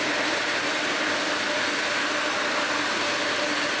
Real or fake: real